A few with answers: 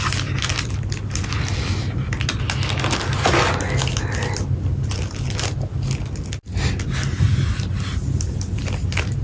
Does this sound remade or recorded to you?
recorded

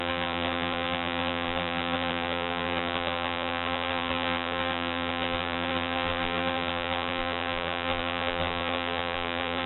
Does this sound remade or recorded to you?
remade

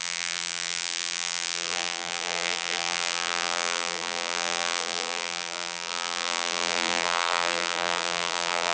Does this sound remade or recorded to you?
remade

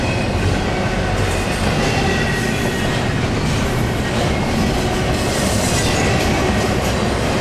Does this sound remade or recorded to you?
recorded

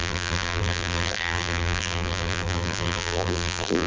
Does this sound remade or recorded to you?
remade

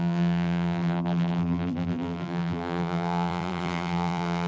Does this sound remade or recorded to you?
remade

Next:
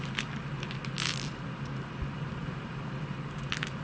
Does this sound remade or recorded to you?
recorded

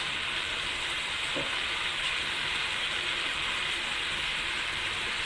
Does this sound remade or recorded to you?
remade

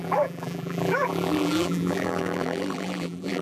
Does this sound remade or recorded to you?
remade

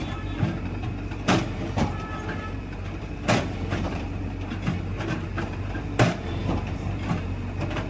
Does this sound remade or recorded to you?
remade